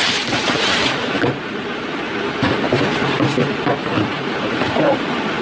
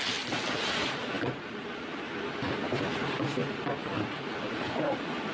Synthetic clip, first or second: first